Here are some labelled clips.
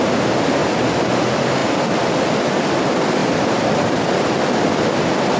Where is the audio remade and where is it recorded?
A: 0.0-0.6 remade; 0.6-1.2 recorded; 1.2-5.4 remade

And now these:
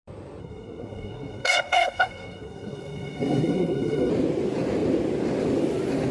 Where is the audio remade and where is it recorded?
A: 0.0-0.4 recorded; 0.4-4.1 remade; 4.1-6.1 recorded